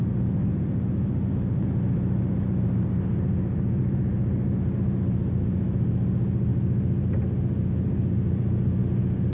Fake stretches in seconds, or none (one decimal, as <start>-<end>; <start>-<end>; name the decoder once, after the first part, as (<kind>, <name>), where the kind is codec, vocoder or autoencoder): none